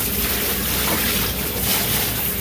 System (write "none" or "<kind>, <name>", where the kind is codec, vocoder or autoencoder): none